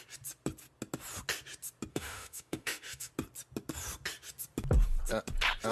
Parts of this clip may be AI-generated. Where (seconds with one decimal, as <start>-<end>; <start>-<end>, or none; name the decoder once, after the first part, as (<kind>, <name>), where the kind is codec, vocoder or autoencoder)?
1.9-3.1 (autoencoder, DAC-VAE)